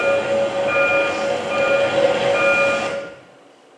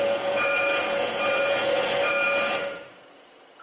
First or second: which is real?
first